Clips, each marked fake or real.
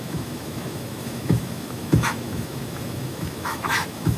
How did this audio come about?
fake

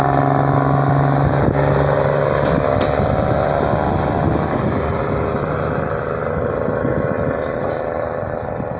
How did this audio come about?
real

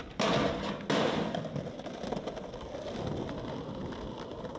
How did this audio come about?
real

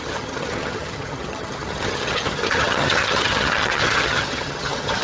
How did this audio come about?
fake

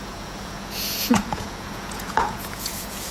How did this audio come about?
fake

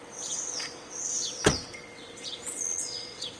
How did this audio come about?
fake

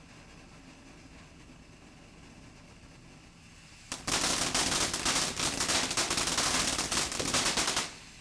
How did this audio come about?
real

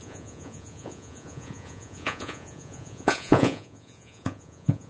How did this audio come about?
fake